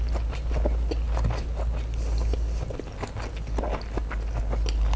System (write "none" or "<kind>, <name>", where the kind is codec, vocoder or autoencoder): none